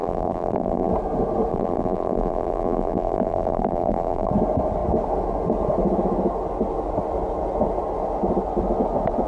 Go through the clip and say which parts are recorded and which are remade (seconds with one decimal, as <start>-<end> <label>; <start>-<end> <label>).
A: 0.0-0.9 remade; 0.9-1.5 recorded; 1.5-4.3 remade; 4.3-9.3 recorded

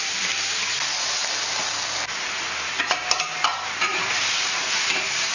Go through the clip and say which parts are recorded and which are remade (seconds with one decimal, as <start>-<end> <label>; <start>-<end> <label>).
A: 0.0-3.9 recorded; 3.9-4.6 remade; 4.6-5.3 recorded

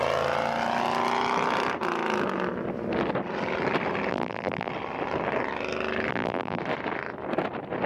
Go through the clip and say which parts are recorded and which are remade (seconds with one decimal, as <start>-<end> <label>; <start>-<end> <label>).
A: 0.0-4.1 recorded; 4.1-4.7 remade; 4.7-6.1 recorded; 6.1-6.6 remade; 6.6-7.9 recorded

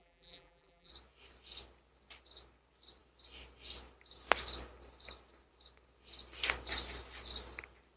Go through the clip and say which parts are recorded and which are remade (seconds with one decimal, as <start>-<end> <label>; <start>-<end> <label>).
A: 0.0-0.9 remade; 0.9-8.0 recorded

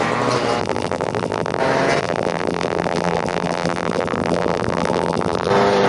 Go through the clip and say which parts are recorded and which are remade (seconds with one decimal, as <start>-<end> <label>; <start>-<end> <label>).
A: 0.0-0.6 recorded; 0.6-1.6 remade; 1.6-2.0 recorded; 2.0-5.5 remade; 5.5-5.9 recorded